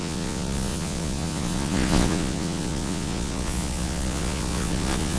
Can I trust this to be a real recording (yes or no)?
no